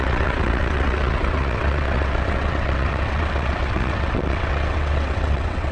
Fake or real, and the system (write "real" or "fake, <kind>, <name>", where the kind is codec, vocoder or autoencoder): fake, vocoder, WaveNeXt